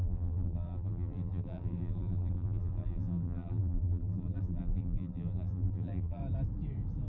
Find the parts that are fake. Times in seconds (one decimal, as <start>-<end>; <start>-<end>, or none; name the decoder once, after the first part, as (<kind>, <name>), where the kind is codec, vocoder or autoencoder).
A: 0.0-6.2 (vocoder, BigVGAN v2)